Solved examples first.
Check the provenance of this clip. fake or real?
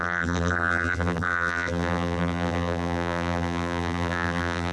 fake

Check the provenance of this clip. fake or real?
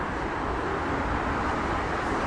real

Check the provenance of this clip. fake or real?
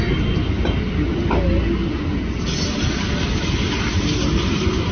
real